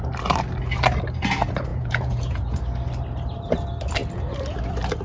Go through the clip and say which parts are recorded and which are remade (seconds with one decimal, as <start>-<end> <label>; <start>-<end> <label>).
0.0-1.7 recorded; 1.7-2.6 remade; 2.6-5.0 recorded